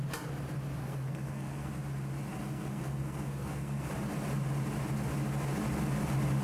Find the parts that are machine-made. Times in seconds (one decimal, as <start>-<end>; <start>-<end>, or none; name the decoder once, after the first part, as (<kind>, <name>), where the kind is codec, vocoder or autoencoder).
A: 0.8-1.7 (codec, SNAC); 2.3-3.9